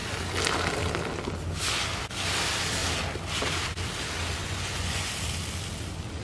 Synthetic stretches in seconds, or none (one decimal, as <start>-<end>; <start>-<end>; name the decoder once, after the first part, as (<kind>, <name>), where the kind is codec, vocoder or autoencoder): 4.4-5.1 (vocoder, Vocos)